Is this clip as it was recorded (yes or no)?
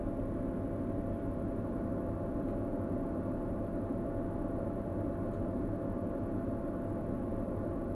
yes